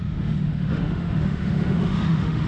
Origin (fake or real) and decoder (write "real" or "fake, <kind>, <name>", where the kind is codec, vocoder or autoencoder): fake, autoencoder, DAC-VAE